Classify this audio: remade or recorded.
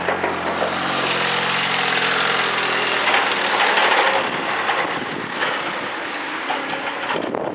recorded